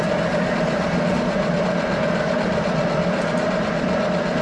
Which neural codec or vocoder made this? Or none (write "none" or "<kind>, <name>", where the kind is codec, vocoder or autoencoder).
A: none